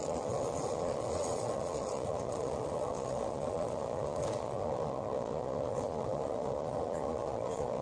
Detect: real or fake fake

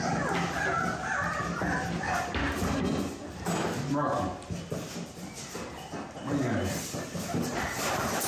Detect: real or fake real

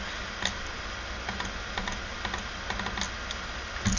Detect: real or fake real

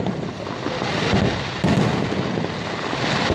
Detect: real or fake real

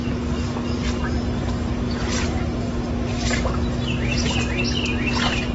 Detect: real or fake real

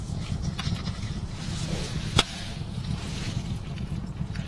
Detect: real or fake fake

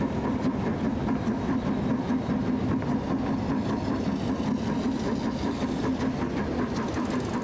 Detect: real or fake real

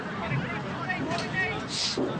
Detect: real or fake real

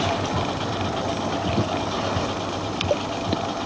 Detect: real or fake real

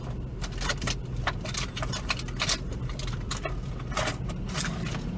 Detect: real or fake real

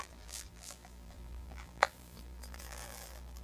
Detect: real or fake fake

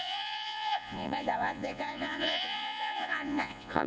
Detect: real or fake fake